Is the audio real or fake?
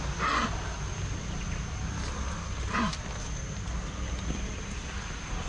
real